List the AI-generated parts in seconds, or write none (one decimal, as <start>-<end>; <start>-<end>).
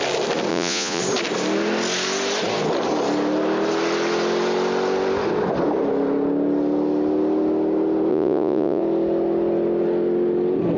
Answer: 0.5-1.0; 8.1-8.8